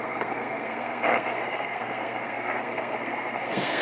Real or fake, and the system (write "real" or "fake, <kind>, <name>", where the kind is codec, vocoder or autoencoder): fake, codec, SNAC